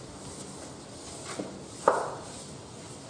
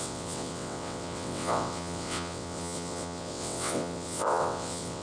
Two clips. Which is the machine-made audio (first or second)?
second